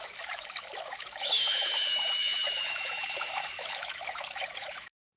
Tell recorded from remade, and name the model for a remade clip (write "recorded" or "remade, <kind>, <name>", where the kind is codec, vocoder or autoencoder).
remade, autoencoder, DAC-VAE